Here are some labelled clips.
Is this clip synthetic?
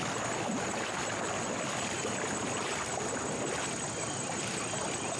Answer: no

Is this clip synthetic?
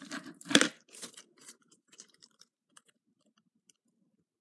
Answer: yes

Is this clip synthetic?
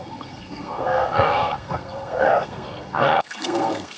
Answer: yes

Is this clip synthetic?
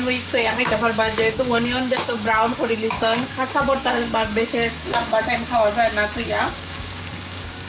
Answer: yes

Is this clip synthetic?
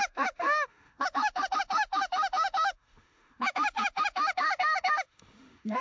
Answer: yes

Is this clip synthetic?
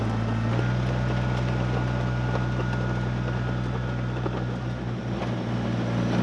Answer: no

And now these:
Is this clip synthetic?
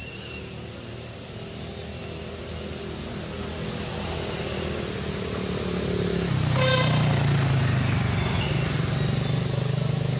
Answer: no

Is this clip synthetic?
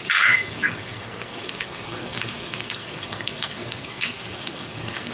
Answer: yes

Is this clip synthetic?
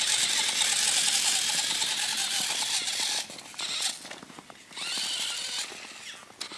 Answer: no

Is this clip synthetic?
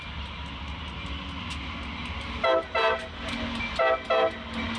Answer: no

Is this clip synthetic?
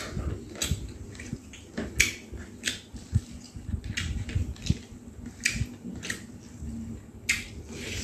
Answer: no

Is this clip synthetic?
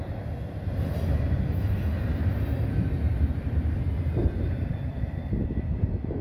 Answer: yes